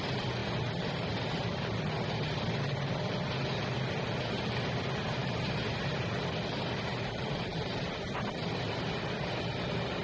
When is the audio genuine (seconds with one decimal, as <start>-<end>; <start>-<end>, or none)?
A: 0.0-10.0